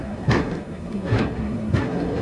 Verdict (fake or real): fake